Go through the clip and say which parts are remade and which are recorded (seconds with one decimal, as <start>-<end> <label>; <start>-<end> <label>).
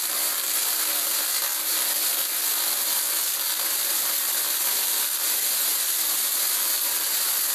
0.0-7.5 recorded